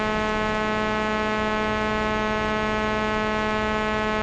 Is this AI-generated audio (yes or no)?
no